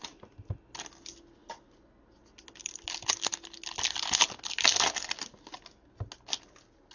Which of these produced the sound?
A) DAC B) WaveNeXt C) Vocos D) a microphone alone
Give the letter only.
D